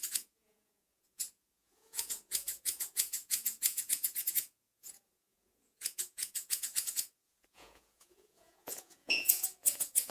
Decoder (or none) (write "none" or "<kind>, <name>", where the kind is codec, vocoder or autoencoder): vocoder, Vocos